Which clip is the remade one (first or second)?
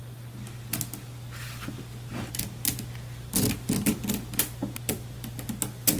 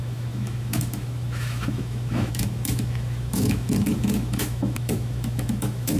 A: second